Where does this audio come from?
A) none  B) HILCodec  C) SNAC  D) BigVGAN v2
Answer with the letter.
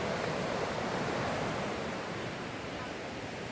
D